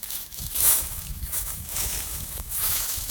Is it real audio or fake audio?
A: fake